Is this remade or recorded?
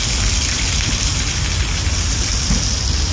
recorded